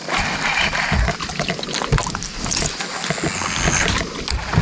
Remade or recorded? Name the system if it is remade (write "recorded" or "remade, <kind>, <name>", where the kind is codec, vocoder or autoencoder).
recorded